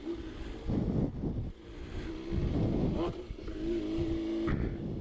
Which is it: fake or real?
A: real